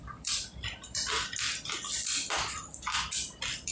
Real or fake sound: fake